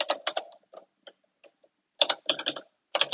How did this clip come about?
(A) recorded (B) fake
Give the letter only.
A